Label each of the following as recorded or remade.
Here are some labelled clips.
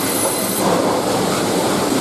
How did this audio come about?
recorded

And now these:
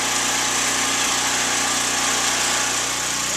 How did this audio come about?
recorded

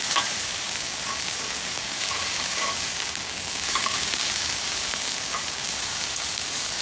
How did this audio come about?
remade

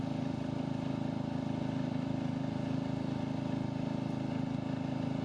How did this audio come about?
recorded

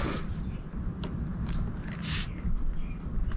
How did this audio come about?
recorded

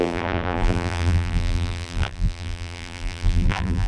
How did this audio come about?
remade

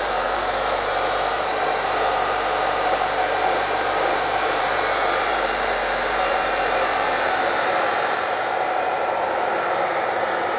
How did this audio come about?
remade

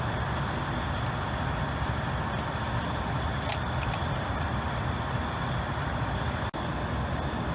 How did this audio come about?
recorded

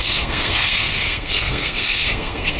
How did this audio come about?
remade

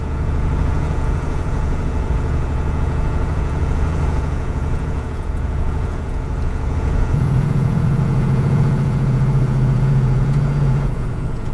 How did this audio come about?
remade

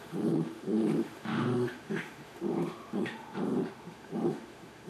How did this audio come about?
remade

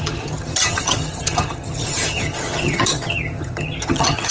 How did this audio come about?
remade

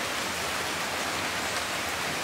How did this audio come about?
recorded